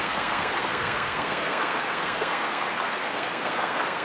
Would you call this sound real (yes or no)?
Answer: no